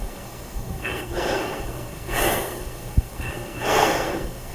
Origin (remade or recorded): remade